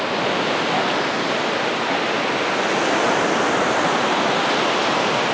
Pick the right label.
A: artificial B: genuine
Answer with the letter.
B